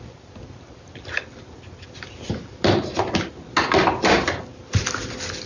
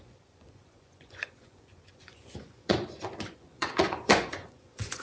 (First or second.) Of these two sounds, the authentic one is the first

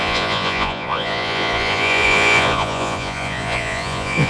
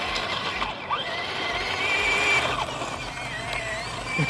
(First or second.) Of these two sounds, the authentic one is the second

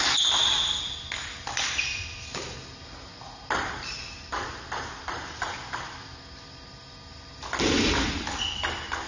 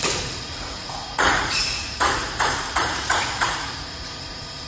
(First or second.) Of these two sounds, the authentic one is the first